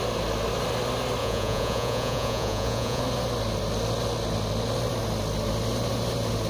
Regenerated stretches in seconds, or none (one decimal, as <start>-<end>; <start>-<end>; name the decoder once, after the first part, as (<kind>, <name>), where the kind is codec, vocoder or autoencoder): 1.2-3.0 (vocoder, Vocos)

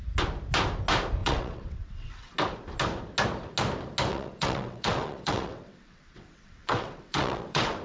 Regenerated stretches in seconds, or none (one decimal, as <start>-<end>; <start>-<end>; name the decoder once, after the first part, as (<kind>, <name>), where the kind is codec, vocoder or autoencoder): 1.2-2.3 (vocoder, WaveNeXt); 4.1-7.8

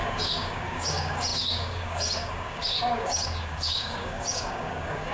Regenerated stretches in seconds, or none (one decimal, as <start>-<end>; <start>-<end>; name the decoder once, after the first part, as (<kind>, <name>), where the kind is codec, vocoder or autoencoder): 0.0-5.1 (codec, DAC)

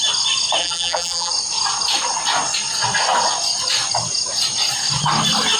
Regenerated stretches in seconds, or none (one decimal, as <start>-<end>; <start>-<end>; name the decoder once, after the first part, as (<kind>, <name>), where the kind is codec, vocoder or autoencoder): 0.6-1.3 (vocoder, BigVGAN v2)

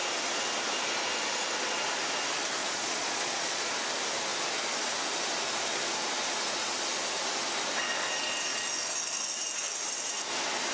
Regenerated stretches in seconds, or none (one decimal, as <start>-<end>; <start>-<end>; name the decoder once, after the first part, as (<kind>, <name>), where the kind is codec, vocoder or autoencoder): 2.6-3.7 (vocoder, Vocos)

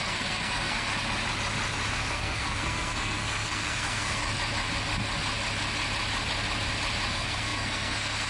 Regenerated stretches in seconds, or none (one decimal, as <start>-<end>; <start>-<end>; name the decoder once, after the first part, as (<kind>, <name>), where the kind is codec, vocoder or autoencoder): 0.0-0.9 (codec, SNAC); 1.9-4.2; 7.1-8.3